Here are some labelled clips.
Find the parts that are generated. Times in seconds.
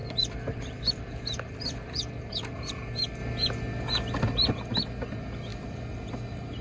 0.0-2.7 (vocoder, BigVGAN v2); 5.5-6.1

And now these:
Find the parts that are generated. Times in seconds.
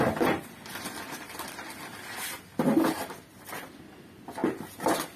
none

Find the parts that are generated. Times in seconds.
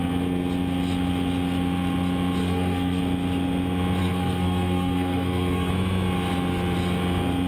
2.4-3.0 (codec, SNAC); 4.0-5.7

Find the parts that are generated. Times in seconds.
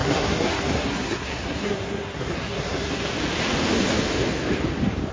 0.0-3.1 (codec, SNAC)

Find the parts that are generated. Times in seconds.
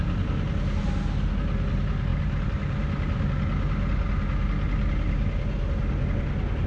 none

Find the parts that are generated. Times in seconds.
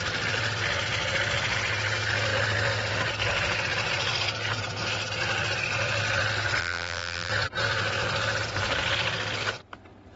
6.6-7.3 (vocoder, BigVGAN v2)